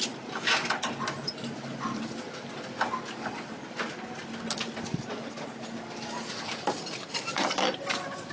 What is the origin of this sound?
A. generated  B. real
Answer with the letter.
B